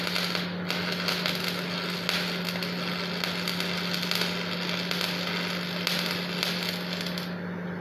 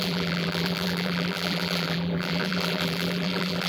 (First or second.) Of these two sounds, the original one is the first